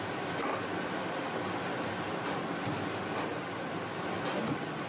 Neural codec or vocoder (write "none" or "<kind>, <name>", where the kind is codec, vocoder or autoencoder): none